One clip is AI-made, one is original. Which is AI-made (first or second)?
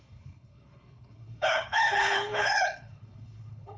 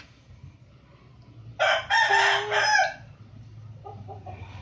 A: first